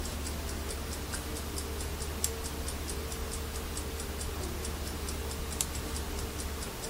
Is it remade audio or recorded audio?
recorded